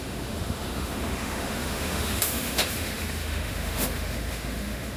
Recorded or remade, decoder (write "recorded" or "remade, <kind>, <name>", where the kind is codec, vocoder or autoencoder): remade, autoencoder, DAC-VAE